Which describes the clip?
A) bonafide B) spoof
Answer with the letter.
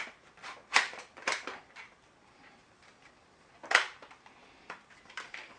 B